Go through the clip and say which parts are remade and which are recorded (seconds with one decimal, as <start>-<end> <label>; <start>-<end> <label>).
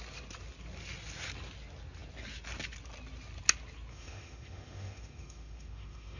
0.0-3.9 recorded; 3.9-6.2 remade